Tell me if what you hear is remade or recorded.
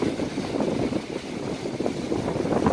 recorded